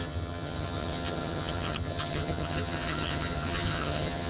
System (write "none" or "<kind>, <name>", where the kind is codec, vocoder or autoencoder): vocoder, HiFi-GAN